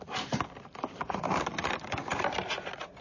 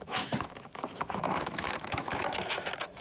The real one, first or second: first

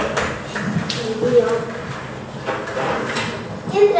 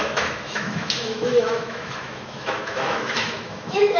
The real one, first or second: first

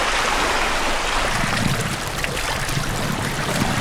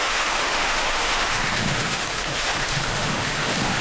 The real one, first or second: first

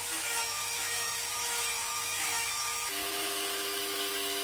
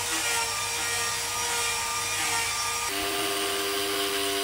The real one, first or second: second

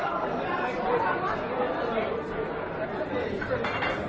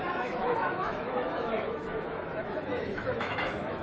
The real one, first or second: first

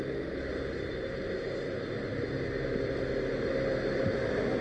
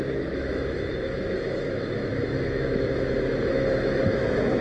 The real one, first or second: first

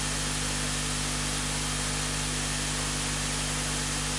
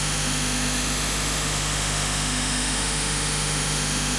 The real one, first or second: first